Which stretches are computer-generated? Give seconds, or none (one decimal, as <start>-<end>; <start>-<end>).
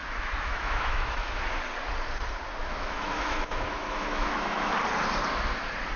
0.0-1.5; 2.6-4.7